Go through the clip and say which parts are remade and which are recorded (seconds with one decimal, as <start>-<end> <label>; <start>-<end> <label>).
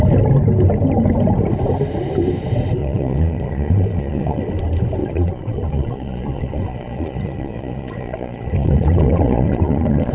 0.0-2.8 recorded; 2.8-4.4 remade; 4.4-5.0 recorded; 5.0-10.1 remade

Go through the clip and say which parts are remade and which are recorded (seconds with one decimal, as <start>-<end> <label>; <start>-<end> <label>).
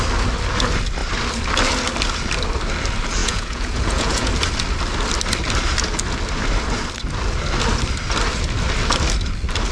0.0-3.2 recorded; 3.2-4.3 remade; 4.3-9.7 recorded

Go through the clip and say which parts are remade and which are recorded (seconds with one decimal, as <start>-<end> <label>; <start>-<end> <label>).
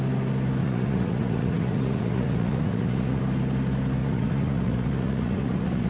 0.0-0.6 recorded; 0.6-3.2 remade; 3.2-4.0 recorded; 4.0-5.9 remade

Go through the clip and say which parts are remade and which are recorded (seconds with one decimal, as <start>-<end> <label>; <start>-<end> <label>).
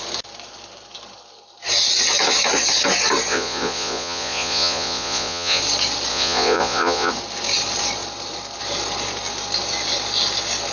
0.0-3.3 recorded; 3.3-5.6 remade; 5.6-6.1 recorded; 6.1-7.1 remade; 7.1-10.7 recorded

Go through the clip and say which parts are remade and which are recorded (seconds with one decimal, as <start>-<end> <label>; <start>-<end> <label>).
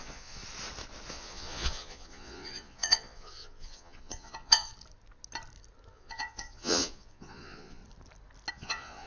0.0-0.4 remade; 0.4-1.1 recorded; 1.1-4.7 remade; 4.7-5.9 recorded; 5.9-7.8 remade; 7.8-8.5 recorded; 8.5-9.1 remade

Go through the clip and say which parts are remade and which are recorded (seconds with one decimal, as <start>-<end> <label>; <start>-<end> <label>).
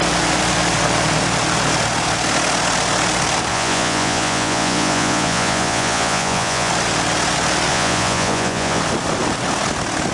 0.0-3.5 recorded; 3.5-6.7 remade; 6.7-7.7 recorded; 7.7-8.8 remade; 8.8-10.1 recorded